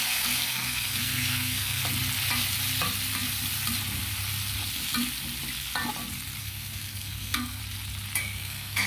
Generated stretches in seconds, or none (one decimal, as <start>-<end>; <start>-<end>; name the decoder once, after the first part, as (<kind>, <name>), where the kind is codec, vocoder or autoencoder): 0.0-1.8 (codec, SNAC); 6.4-7.6; 8.2-8.9

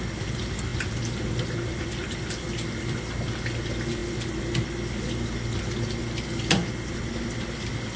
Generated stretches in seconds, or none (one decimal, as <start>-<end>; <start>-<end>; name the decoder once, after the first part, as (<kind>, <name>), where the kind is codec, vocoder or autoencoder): none

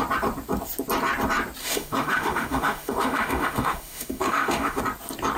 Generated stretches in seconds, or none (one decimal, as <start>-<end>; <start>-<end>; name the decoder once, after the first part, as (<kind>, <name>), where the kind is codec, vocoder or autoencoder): 1.6-4.8 (autoencoder, DAC-VAE)

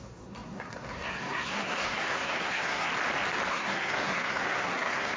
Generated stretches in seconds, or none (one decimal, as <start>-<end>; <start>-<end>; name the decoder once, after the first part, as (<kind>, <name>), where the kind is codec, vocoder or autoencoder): 0.0-2.9 (codec, SNAC); 3.5-5.2

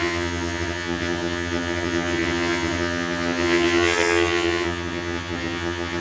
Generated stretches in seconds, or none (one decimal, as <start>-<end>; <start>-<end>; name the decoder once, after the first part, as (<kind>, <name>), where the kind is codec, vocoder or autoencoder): 0.0-6.0 (vocoder, HiFi-GAN)

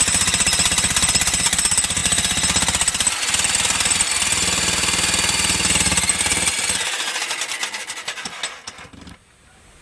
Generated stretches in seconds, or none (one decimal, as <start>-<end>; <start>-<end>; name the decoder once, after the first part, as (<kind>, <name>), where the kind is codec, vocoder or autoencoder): none